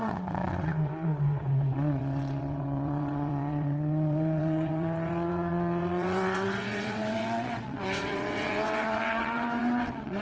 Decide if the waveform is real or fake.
fake